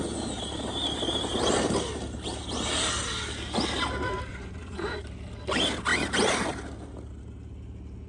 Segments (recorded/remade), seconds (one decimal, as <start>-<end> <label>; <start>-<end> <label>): 0.0-4.3 recorded; 4.3-5.0 remade; 5.0-8.1 recorded

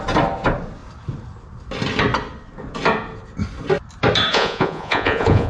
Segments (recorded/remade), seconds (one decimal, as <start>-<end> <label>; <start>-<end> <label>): 0.0-4.3 recorded; 4.3-5.5 remade

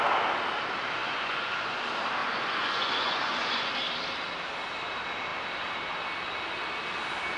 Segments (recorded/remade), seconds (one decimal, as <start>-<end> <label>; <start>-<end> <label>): 0.0-1.0 recorded; 1.0-1.8 remade; 1.8-2.2 recorded; 2.2-3.7 remade; 3.7-7.4 recorded

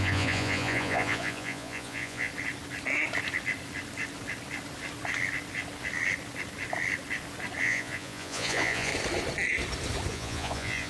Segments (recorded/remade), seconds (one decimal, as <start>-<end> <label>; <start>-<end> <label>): 0.0-2.3 remade; 2.3-7.6 recorded; 7.6-8.9 remade; 8.9-10.1 recorded; 10.1-10.9 remade

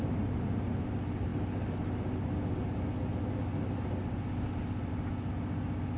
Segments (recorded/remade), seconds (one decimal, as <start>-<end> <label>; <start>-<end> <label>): 0.0-6.0 recorded

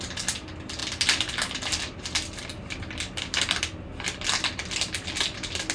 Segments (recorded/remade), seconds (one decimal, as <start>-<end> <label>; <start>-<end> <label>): 0.0-5.7 recorded

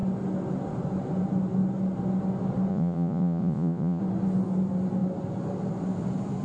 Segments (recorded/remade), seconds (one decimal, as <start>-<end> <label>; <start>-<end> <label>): 0.0-2.7 recorded; 2.7-4.0 remade; 4.0-6.4 recorded